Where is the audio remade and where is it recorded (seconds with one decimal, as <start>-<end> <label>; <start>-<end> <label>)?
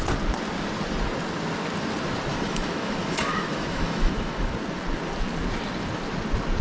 0.0-2.3 recorded; 2.3-4.5 remade; 4.5-6.6 recorded